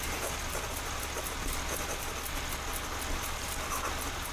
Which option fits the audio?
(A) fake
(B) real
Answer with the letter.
B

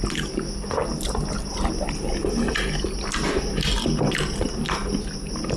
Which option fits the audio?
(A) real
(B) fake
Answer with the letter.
A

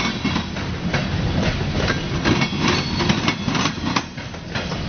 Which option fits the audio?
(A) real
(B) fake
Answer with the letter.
A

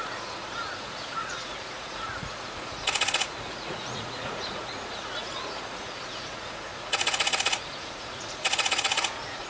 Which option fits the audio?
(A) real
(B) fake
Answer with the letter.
B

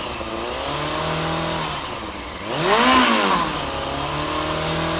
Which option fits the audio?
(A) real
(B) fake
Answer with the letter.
A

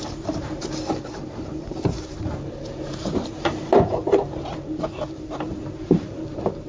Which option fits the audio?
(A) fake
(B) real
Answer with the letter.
A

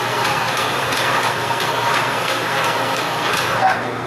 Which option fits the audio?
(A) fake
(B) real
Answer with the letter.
A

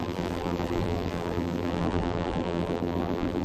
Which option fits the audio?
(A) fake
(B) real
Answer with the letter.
A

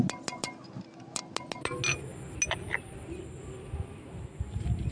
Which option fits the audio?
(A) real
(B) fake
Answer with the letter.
A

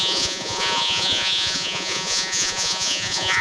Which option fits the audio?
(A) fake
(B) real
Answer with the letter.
A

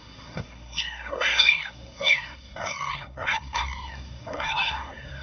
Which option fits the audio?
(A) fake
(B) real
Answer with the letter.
A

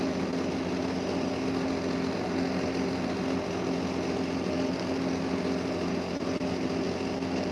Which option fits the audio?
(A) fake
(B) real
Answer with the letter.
B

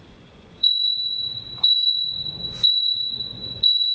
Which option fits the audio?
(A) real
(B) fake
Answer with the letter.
B